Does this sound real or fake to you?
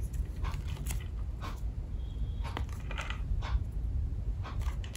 real